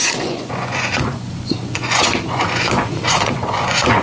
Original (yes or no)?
no